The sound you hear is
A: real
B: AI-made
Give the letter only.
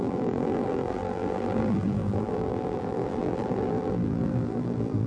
B